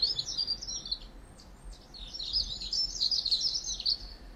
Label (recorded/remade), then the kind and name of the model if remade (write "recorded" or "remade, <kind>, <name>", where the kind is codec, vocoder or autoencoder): recorded